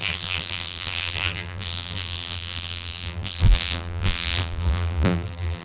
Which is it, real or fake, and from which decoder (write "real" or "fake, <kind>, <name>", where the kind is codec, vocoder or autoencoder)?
fake, vocoder, BigVGAN v2